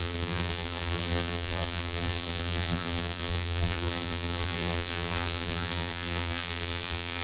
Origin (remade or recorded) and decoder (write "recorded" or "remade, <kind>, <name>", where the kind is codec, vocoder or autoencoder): remade, vocoder, BigVGAN v2